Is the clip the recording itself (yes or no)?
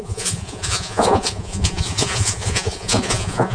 no